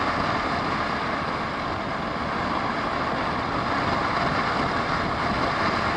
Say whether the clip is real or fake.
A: real